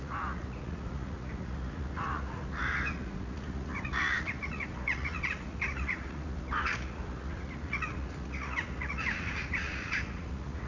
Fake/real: fake